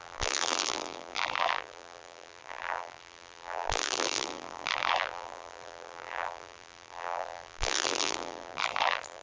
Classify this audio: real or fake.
fake